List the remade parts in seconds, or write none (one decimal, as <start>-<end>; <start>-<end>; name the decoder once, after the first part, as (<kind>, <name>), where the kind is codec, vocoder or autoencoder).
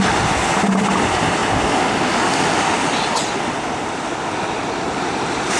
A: 0.0-1.4 (vocoder, BigVGAN v2); 4.8-5.6